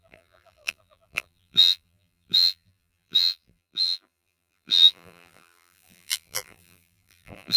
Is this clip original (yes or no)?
no